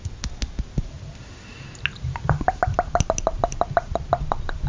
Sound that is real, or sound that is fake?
real